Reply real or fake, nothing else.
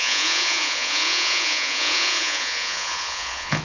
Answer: fake